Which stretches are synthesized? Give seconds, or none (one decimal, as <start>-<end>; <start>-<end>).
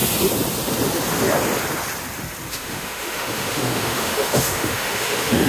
2.5-5.5